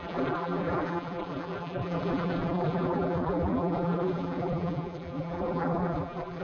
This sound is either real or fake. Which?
fake